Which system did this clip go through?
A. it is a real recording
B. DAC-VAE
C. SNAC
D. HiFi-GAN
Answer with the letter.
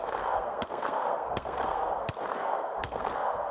C